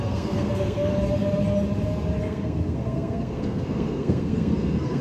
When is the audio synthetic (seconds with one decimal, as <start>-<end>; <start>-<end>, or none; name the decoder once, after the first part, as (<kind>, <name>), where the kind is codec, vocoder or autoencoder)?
0.0-0.9 (codec, SNAC); 2.2-5.0